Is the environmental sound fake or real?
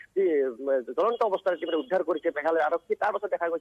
real